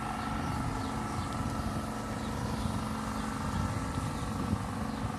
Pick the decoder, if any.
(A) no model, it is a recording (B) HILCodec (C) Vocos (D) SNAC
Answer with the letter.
A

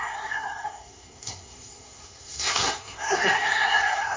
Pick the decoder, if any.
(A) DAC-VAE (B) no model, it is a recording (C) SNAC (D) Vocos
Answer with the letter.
C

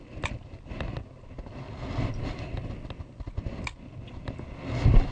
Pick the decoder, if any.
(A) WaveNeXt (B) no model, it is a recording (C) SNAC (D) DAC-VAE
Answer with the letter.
B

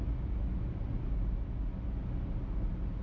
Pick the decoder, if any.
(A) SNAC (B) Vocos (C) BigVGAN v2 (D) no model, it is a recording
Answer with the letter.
D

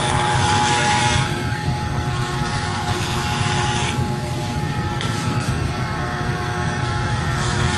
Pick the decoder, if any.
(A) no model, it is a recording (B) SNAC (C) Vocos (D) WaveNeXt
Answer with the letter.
B